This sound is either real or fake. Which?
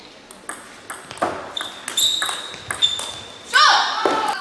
real